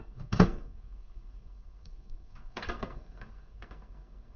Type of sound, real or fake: fake